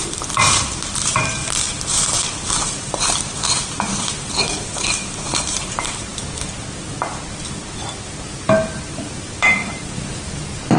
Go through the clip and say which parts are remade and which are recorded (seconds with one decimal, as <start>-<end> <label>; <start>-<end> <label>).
0.0-6.1 remade; 6.1-6.8 recorded; 6.8-10.8 remade